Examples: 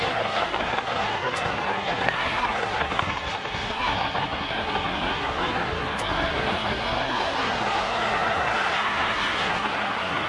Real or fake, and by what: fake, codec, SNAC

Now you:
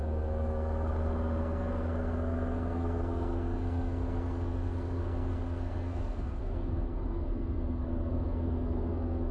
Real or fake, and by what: fake, codec, SNAC